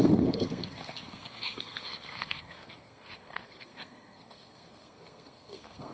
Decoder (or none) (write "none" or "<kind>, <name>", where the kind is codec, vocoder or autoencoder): codec, SNAC